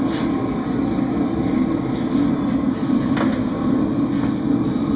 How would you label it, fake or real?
real